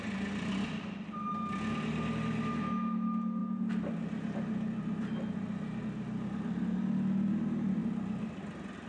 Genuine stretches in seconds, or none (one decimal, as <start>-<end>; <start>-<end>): 0.0-8.9